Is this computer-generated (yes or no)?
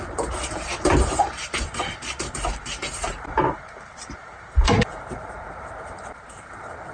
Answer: yes